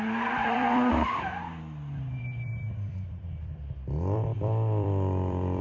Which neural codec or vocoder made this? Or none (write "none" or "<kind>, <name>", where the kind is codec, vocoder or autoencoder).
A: vocoder, BigVGAN v2